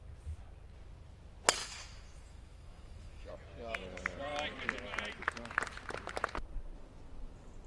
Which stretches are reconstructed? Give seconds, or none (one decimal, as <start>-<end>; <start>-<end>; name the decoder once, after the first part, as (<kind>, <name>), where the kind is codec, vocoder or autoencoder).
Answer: 1.6-3.3 (autoencoder, DAC-VAE)